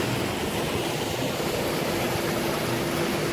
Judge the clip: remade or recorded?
recorded